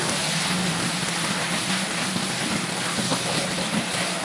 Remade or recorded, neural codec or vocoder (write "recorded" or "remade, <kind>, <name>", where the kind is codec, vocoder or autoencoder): recorded